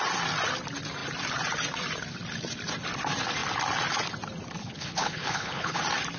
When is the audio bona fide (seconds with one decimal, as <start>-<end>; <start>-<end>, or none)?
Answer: 0.0-4.6; 5.8-6.2